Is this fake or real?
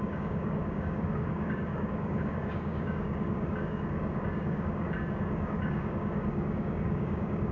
fake